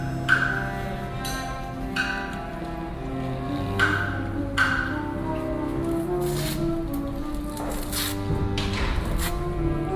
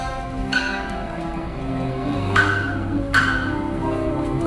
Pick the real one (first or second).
first